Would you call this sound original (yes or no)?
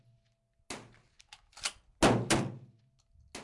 yes